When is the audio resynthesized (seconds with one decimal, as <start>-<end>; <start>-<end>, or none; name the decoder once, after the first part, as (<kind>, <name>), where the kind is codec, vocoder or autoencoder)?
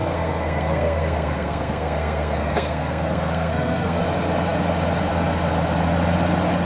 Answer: 0.0-4.0 (codec, SNAC)